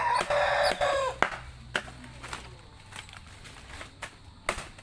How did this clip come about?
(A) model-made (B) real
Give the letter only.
B